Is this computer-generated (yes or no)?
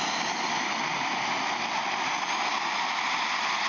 no